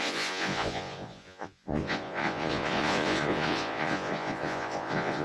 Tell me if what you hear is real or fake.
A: fake